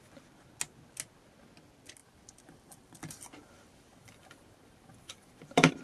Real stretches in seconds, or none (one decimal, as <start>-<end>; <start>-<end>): 0.0-2.0